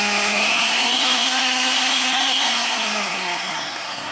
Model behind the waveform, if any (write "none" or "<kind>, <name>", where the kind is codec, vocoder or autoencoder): codec, SNAC